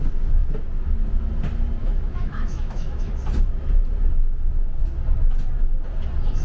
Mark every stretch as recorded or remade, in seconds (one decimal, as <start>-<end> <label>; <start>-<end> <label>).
0.0-1.8 recorded; 1.8-3.1 remade; 3.1-6.4 recorded